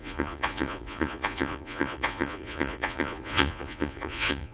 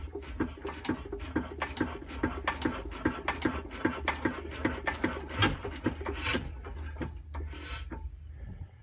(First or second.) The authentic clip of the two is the second